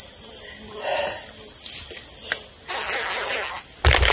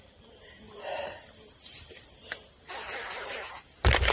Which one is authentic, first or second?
first